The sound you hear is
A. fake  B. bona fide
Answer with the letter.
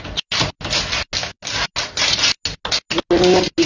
B